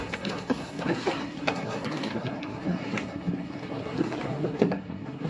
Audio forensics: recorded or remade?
remade